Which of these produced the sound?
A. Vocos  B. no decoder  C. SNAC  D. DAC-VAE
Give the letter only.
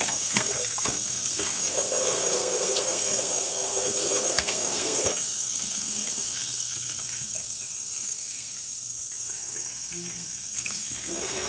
C